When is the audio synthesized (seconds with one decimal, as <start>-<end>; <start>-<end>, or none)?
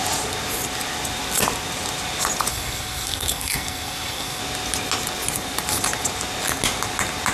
2.5-4.4